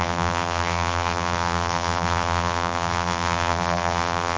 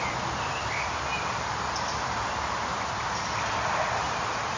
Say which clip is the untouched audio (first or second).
second